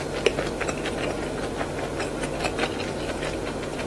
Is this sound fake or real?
real